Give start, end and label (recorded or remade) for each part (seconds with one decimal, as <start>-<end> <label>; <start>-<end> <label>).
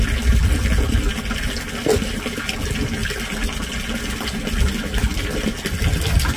0.0-6.4 recorded